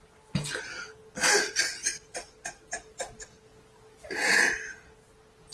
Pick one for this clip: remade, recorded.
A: recorded